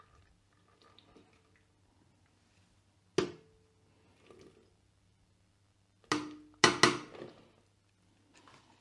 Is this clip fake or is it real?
real